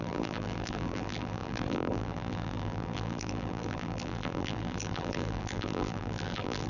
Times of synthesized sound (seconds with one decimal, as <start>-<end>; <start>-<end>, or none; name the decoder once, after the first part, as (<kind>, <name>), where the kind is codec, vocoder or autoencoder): 0.0-6.7 (vocoder, BigVGAN v2)